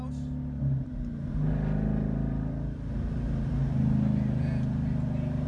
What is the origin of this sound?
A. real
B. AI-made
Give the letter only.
A